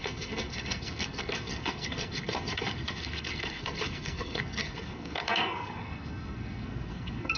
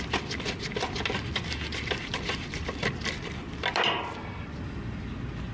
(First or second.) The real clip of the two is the second